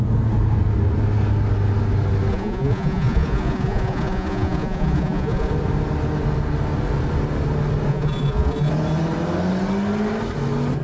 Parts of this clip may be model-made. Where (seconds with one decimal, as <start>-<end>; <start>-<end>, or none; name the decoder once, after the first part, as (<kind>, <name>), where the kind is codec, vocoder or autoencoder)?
2.3-5.5 (vocoder, Vocos); 7.9-8.7